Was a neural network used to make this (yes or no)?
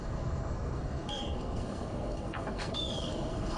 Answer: yes